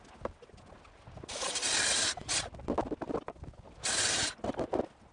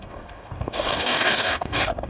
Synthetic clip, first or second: second